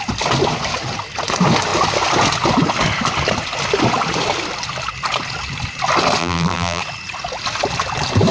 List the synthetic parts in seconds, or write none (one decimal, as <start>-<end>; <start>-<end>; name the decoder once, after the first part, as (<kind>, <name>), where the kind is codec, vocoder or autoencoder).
6.2-6.8 (vocoder, BigVGAN v2)